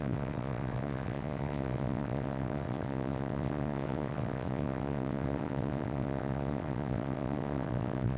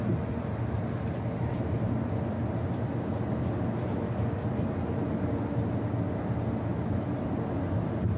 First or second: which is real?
second